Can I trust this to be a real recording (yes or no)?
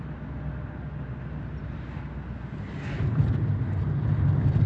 yes